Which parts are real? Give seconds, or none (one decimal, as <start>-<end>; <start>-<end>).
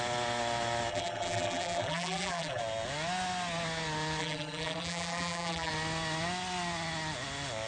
0.0-0.9; 2.6-4.2; 5.7-7.7